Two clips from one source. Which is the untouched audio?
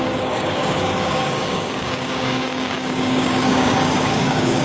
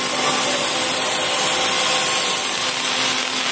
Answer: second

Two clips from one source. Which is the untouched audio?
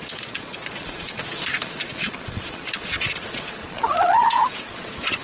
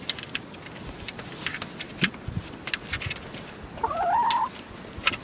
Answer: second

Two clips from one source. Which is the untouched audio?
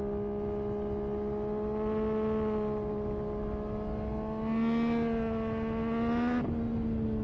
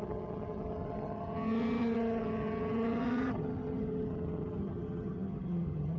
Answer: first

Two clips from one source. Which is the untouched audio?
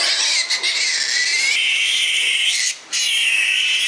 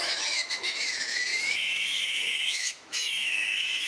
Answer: first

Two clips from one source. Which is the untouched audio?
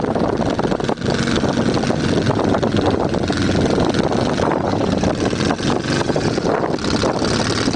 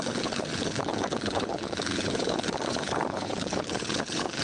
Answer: first